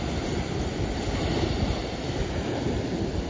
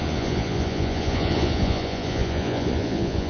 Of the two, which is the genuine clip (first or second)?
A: first